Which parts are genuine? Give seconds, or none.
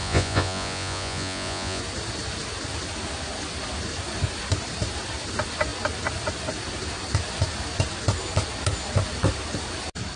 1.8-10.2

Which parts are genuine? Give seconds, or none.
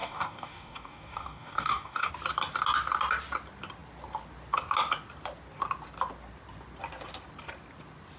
2.1-8.2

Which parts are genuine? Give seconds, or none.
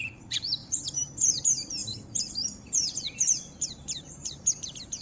none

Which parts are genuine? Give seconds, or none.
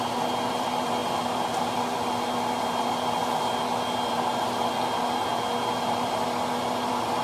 0.0-7.2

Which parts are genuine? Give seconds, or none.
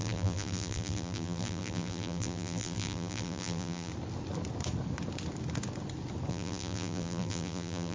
3.9-6.3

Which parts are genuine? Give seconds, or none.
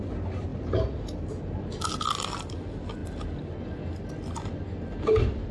0.0-5.5